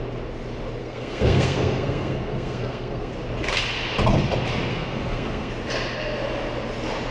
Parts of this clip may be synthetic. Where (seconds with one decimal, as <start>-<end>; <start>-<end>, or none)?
0.8-3.1; 4.7-5.5

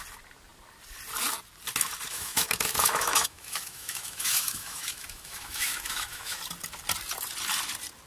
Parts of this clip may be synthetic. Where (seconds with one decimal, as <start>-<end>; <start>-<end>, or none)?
2.1-6.4

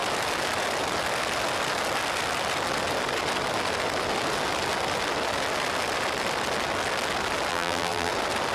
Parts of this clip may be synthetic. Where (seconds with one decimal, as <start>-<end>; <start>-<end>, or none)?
7.5-8.1